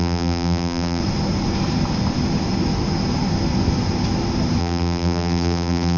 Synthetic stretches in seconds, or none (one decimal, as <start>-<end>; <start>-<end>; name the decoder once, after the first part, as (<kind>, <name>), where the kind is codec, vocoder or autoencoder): 0.0-1.0 (vocoder, BigVGAN v2); 4.6-6.0